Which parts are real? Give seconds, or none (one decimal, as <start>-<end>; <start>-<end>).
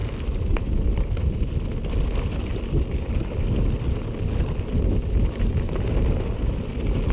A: 0.0-7.1